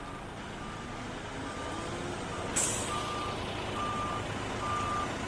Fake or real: real